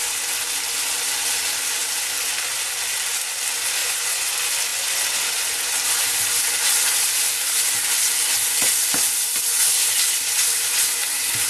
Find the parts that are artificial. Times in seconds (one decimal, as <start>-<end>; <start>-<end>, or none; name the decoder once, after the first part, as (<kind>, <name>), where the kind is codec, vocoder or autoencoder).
3.8-4.3 (vocoder, Vocos)